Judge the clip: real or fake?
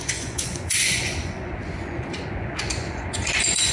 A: fake